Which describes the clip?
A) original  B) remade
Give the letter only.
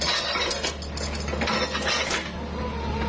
A